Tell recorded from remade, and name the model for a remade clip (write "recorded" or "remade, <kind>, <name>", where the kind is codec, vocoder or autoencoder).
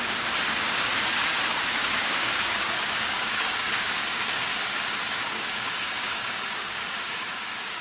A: remade, codec, DAC